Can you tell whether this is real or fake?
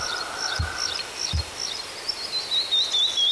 real